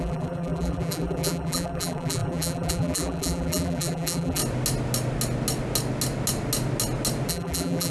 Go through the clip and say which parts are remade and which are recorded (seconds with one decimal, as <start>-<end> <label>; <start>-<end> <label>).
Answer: 0.0-4.4 remade; 4.4-7.3 recorded; 7.3-7.9 remade